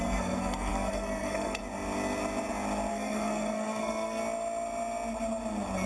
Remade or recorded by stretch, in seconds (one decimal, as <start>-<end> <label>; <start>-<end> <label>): 0.0-1.6 remade; 1.6-2.9 recorded; 2.9-4.2 remade; 4.2-5.9 recorded